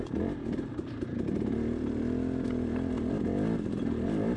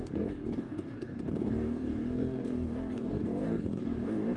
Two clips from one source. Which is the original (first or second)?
first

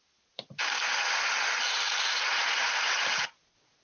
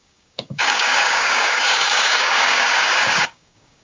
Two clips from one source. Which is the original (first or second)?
first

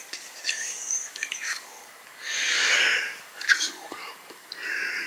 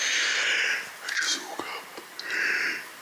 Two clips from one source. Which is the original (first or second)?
second